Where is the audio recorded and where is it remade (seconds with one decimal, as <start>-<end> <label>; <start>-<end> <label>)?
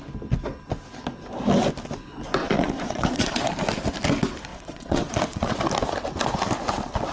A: 0.0-2.4 recorded; 2.4-3.5 remade; 3.5-4.5 recorded; 4.5-5.6 remade; 5.6-7.1 recorded